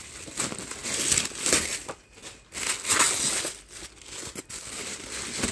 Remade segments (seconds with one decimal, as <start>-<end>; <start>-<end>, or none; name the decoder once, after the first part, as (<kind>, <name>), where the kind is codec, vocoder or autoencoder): 0.0-0.8 (vocoder, BigVGAN v2); 1.6-2.2